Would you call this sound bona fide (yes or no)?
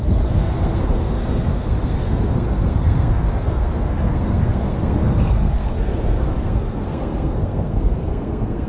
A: no